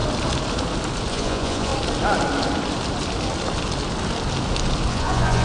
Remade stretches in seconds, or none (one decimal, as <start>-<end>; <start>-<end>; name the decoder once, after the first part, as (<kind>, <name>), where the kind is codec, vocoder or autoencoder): 1.1-1.7 (vocoder, Vocos); 4.9-5.4